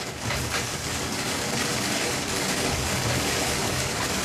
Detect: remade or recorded remade